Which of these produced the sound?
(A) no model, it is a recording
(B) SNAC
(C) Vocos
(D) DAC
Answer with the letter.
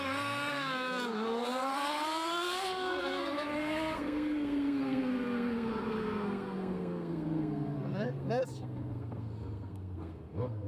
B